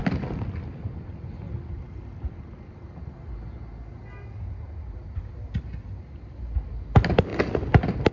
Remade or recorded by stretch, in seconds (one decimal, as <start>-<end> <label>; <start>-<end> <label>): 0.0-8.1 recorded